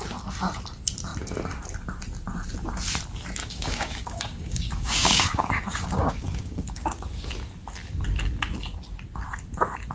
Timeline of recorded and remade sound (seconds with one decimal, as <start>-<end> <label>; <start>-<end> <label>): 0.0-3.4 recorded; 3.4-7.0 remade; 7.0-9.9 recorded